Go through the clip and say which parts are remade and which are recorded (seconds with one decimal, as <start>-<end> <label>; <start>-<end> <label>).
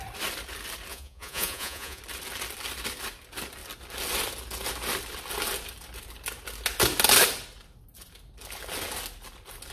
0.0-0.9 recorded; 0.9-2.0 remade; 2.0-9.7 recorded